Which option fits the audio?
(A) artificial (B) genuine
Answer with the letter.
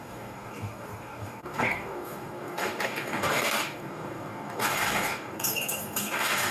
A